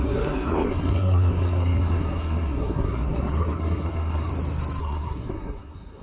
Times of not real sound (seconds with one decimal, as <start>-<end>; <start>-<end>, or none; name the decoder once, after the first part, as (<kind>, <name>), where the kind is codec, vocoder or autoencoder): 0.0-4.3 (codec, SNAC); 4.8-6.0